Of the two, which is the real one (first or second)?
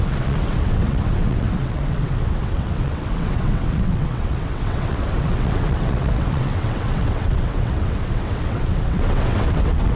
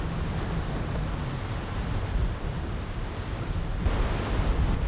second